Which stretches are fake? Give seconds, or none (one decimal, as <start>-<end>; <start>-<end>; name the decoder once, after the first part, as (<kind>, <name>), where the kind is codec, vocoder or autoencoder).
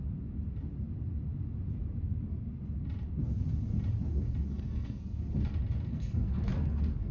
4.5-5.2 (codec, SNAC); 5.9-7.1